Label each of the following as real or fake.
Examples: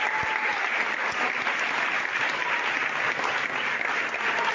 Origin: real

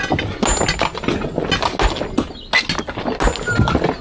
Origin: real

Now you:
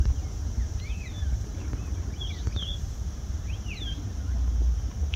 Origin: real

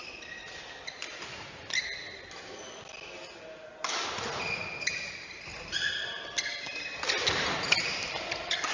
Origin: real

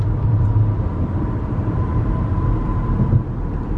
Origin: fake